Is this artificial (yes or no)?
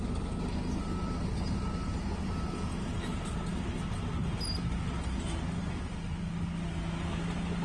no